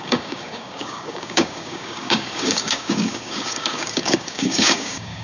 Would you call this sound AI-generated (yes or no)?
yes